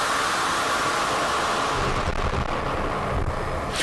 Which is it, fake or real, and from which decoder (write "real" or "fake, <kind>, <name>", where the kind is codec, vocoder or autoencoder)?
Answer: real